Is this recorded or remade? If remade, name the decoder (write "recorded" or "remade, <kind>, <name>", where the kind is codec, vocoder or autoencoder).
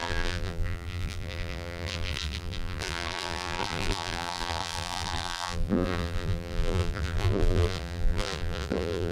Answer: remade, vocoder, BigVGAN v2